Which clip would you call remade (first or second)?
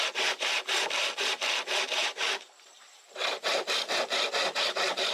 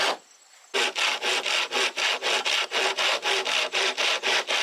first